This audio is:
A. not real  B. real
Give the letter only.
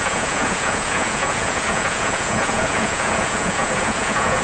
A